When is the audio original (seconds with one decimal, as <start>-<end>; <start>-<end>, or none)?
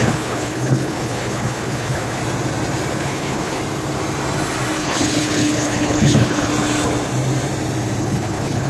2.2-2.9; 3.6-4.8; 6.5-8.0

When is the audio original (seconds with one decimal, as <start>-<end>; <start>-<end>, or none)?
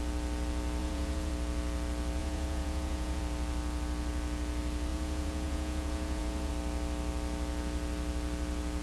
0.0-0.8; 1.3-2.2; 3.2-4.9; 6.5-8.8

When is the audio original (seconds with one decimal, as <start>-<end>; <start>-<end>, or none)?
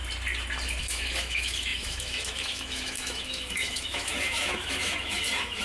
0.0-0.8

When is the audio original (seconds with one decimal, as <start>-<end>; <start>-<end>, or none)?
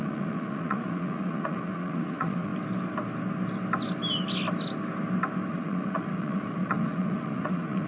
2.5-5.5